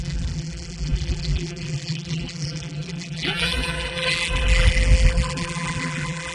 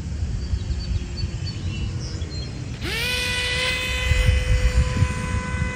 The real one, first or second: second